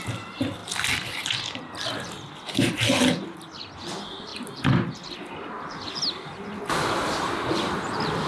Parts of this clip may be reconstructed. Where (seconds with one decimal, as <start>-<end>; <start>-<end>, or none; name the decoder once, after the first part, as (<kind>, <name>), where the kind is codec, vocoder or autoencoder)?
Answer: none

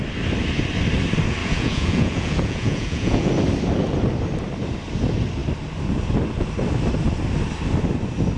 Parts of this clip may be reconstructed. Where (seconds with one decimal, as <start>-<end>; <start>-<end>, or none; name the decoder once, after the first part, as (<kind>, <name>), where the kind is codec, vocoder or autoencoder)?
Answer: 1.4-3.3 (vocoder, Vocos)

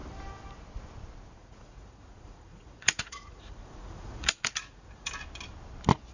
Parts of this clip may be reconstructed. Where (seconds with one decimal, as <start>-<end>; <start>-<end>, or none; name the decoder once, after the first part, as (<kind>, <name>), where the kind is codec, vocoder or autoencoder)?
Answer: 1.4-5.1 (vocoder, Vocos)